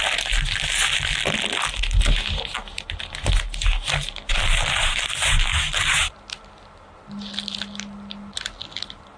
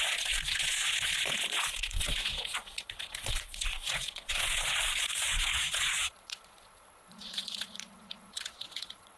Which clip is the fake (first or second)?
second